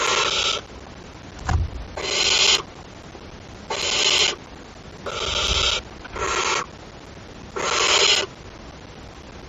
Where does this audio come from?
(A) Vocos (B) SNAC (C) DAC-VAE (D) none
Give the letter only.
D